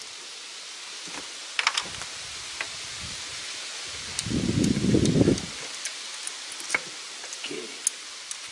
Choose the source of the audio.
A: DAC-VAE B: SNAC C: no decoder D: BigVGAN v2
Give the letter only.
C